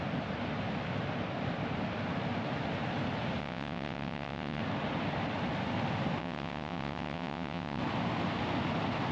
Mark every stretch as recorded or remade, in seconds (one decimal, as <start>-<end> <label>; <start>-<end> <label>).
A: 0.0-3.4 recorded; 3.4-4.6 remade; 4.6-6.2 recorded; 6.2-7.8 remade; 7.8-9.1 recorded

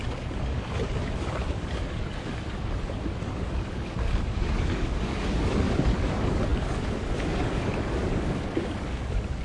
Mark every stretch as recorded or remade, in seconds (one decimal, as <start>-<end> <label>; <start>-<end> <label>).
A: 0.0-9.4 remade

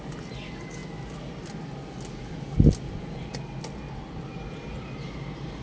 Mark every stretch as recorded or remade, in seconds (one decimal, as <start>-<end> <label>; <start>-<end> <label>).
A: 0.0-5.6 recorded

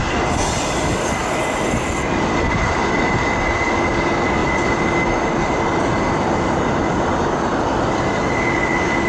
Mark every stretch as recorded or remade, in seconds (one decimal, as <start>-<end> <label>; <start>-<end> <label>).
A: 0.0-9.1 recorded

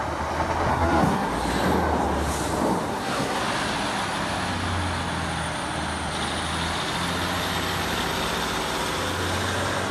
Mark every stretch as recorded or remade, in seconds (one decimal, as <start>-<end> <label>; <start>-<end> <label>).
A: 0.0-0.7 recorded; 0.7-1.3 remade; 1.3-2.9 recorded; 2.9-3.4 remade; 3.4-9.9 recorded